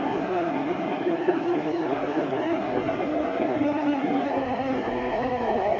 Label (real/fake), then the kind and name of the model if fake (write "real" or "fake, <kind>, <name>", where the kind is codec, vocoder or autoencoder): fake, codec, SNAC